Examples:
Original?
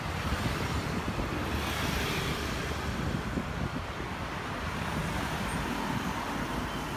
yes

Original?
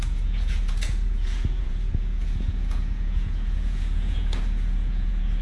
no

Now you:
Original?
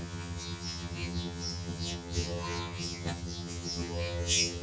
no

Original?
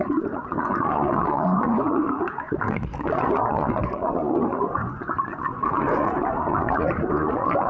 no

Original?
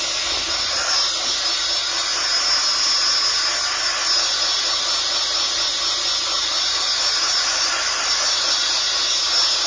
yes